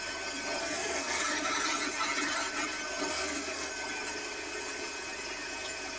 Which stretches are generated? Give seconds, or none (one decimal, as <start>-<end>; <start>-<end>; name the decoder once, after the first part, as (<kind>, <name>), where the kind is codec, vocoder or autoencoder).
0.6-1.2 (codec, SNAC); 3.1-3.7